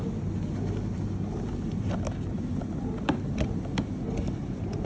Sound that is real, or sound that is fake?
real